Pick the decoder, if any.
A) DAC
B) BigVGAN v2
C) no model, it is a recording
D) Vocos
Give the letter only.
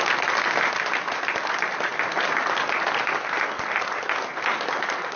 C